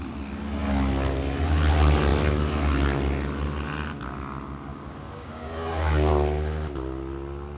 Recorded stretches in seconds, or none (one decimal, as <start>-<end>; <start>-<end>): 0.0-4.7; 6.1-7.6